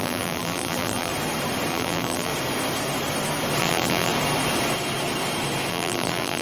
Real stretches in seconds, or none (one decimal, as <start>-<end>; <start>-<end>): 1.1-1.7; 2.3-3.6; 4.1-5.7